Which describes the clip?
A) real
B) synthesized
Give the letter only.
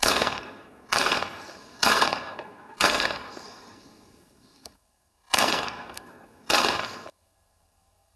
B